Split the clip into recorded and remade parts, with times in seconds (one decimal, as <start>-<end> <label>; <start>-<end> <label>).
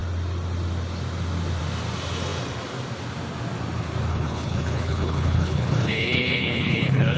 0.0-4.1 recorded; 4.1-7.2 remade